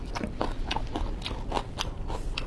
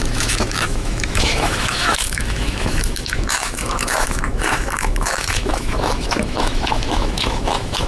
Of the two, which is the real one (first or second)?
first